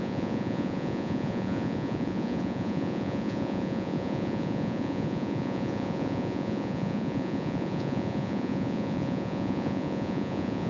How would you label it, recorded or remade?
remade